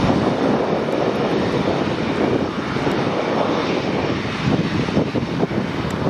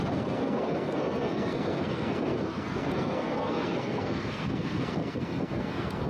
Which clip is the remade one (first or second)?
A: second